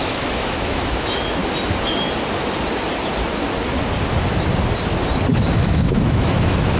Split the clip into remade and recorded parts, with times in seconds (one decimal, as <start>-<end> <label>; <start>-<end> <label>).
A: 0.0-1.4 remade; 1.4-5.5 recorded; 5.5-6.8 remade